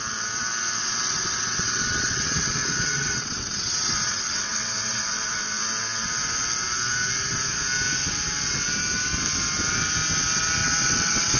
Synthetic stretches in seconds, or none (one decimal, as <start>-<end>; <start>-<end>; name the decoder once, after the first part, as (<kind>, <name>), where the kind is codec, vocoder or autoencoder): 0.8-5.0 (vocoder, WaveNeXt); 10.6-11.4